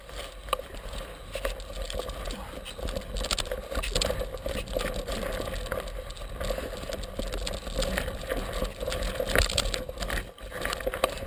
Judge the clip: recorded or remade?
recorded